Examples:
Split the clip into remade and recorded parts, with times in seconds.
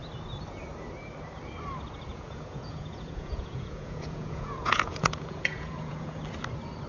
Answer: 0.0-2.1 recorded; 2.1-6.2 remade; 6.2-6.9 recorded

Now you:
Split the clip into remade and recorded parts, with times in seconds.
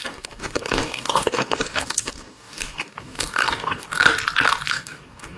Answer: 0.0-4.0 remade; 4.0-4.7 recorded; 4.7-5.4 remade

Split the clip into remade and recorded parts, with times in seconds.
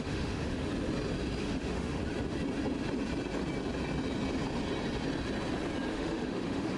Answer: 0.0-0.7 remade; 0.7-1.4 recorded; 1.4-2.0 remade; 2.0-5.9 recorded; 5.9-6.8 remade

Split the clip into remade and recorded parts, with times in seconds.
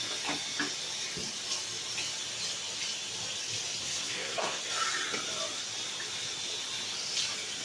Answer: 0.0-3.8 recorded; 3.8-4.6 remade; 4.6-7.6 recorded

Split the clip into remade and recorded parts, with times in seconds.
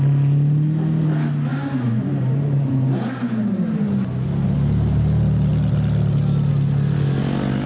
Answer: 0.0-1.5 recorded; 1.5-3.2 remade; 3.2-7.7 recorded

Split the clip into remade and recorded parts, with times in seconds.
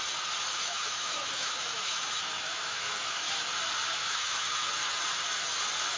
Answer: 0.0-0.5 recorded; 0.5-3.5 remade; 3.5-4.0 recorded; 4.0-4.7 remade; 4.7-6.0 recorded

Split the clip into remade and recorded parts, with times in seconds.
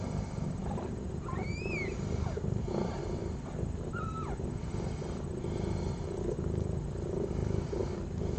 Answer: 0.0-3.2 remade; 3.2-3.8 recorded; 3.8-7.4 remade; 7.4-8.4 recorded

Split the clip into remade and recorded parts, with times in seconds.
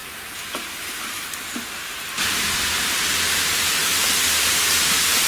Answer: 0.0-3.2 remade; 3.2-3.8 recorded; 3.8-5.3 remade